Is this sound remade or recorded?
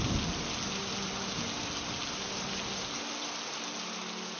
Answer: recorded